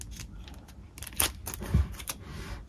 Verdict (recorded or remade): recorded